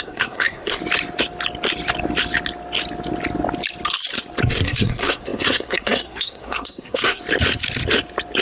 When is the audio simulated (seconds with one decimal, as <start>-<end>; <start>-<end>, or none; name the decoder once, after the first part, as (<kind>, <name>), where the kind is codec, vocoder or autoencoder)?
0.0-0.8 (codec, SNAC); 4.5-7.2